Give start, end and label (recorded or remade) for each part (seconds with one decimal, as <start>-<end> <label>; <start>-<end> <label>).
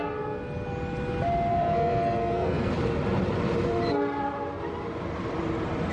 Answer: 0.0-1.5 recorded; 1.5-2.7 remade; 2.7-5.9 recorded